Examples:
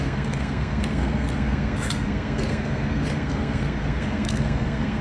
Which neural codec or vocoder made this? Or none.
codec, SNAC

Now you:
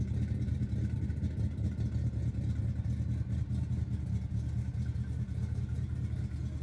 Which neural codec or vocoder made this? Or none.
none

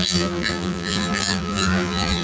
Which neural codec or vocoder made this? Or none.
vocoder, BigVGAN v2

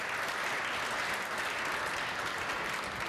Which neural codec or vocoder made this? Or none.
none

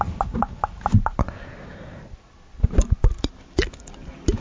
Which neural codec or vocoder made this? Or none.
none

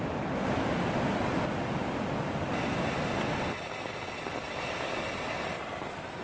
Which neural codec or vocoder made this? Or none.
none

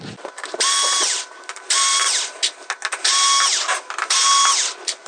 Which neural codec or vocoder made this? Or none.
none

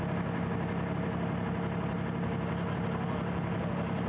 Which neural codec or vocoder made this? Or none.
none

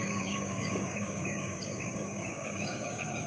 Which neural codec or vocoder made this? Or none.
codec, DAC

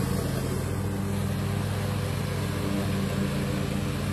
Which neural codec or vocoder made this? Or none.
none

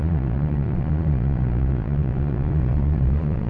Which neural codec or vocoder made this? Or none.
vocoder, Vocos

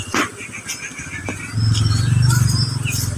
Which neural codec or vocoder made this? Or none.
none